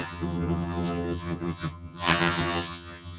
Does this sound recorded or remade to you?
remade